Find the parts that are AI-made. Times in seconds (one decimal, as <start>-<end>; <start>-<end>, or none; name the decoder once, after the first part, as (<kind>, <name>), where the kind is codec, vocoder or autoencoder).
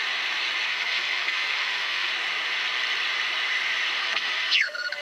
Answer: 0.7-2.1 (codec, SNAC); 4.0-5.0